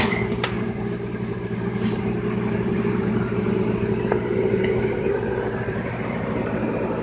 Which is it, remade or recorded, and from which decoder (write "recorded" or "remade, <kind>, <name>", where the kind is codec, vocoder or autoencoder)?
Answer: remade, vocoder, BigVGAN v2